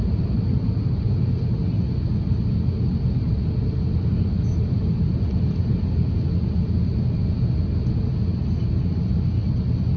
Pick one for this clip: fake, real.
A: real